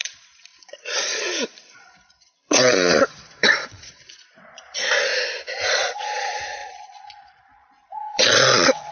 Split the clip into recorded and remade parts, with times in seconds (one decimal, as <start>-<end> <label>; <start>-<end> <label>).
0.0-5.1 remade; 5.1-5.7 recorded; 5.7-8.9 remade

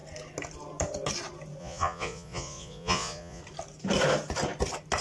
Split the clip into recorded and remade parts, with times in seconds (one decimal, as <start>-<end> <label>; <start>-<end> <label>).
0.0-1.6 recorded; 1.6-3.4 remade; 3.4-5.0 recorded

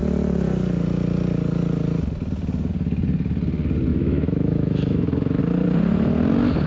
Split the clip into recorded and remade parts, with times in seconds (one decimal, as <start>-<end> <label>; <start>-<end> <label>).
0.0-3.9 recorded; 3.9-5.4 remade; 5.4-6.7 recorded

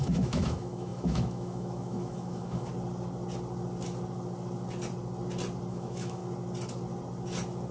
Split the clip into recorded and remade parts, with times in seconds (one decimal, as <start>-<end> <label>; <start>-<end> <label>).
0.0-2.7 remade; 2.7-5.7 recorded; 5.7-6.2 remade; 6.2-7.7 recorded

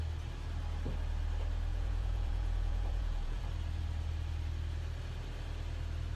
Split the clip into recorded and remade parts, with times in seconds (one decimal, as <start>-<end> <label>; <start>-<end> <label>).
0.0-1.7 recorded; 1.7-3.4 remade; 3.4-6.2 recorded

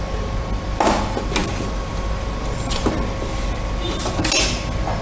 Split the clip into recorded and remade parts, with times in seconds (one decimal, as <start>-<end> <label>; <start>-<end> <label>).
0.0-1.4 recorded; 1.4-4.2 remade; 4.2-5.0 recorded